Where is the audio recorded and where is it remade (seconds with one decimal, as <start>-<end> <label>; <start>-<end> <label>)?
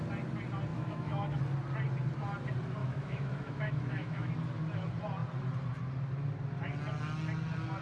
0.0-0.7 recorded; 0.7-1.4 remade; 1.4-2.8 recorded; 2.8-4.3 remade; 4.3-7.8 recorded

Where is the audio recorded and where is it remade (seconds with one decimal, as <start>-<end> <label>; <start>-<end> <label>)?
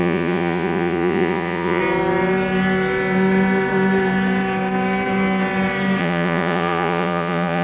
0.0-1.8 remade; 1.8-6.0 recorded; 6.0-7.6 remade